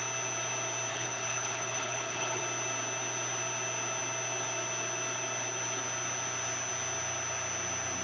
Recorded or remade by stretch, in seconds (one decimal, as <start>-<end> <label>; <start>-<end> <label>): 0.0-0.9 recorded; 0.9-2.4 remade; 2.4-8.0 recorded